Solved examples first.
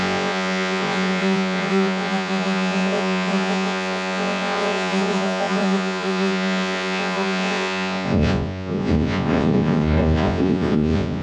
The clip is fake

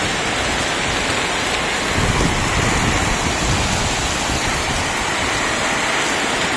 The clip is real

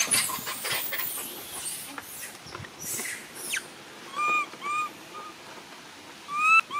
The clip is real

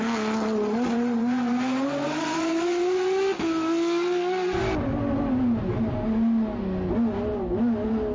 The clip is real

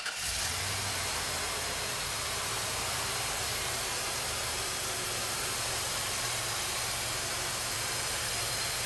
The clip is fake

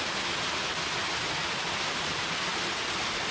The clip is real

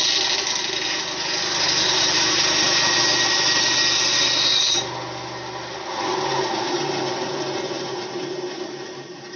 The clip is real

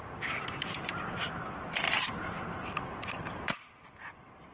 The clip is real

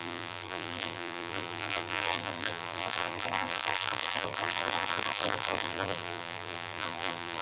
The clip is fake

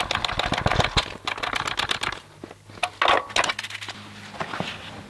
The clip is real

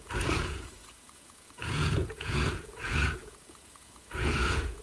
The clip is fake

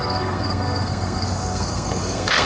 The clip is fake